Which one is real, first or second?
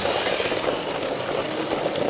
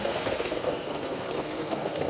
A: first